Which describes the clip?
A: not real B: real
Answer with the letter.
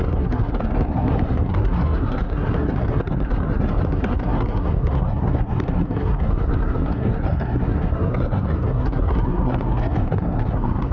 A